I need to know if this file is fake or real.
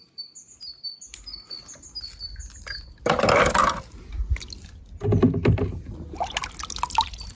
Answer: real